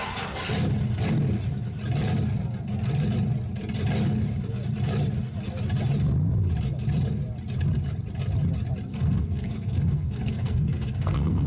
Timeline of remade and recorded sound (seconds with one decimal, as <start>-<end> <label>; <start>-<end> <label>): 0.0-8.9 recorded; 8.9-11.5 remade